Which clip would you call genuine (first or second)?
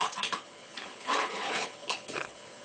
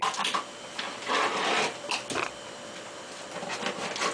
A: second